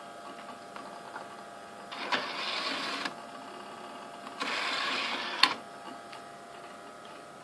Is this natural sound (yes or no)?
yes